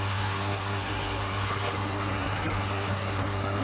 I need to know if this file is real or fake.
fake